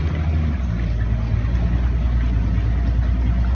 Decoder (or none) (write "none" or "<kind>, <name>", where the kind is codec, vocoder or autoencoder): none